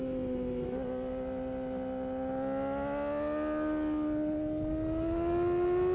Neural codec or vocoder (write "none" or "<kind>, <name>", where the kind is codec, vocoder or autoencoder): none